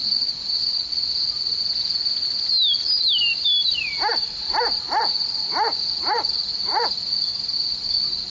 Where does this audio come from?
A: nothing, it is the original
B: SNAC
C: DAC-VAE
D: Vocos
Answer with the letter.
A